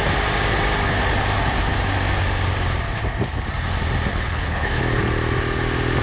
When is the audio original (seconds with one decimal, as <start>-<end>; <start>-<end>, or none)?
0.0-4.1; 4.8-6.0